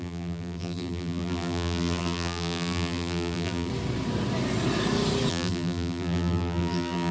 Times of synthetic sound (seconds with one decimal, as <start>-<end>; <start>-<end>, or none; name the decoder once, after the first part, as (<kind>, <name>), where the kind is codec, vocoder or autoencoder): 0.0-3.7 (vocoder, BigVGAN v2); 5.3-7.1